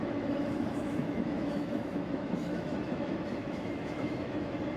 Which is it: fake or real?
fake